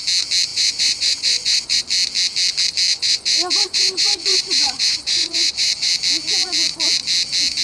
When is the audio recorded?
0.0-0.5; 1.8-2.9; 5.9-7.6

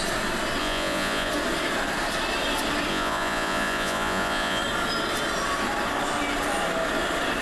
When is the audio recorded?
0.0-0.6; 1.3-2.9; 4.6-7.4

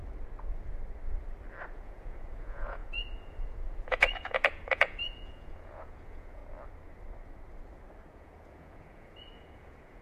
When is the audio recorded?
0.0-1.7; 6.4-8.1

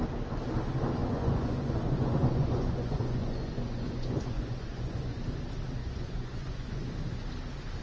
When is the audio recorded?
0.0-1.0; 5.2-5.8; 6.9-7.8

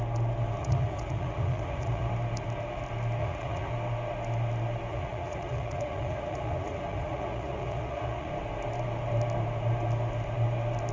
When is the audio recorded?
0.0-0.6; 2.1-3.2; 3.7-4.9; 8.3-10.9

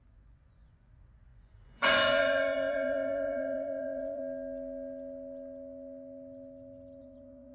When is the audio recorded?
4.2-7.0